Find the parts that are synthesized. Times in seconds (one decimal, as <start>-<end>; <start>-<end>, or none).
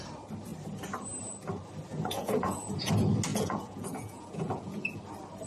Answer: 1.9-2.9; 3.3-5.0